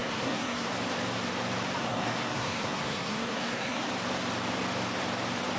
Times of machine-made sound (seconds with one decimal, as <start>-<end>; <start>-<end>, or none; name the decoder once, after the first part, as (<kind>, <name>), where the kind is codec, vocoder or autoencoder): 0.0-0.7 (codec, SNAC); 1.8-3.9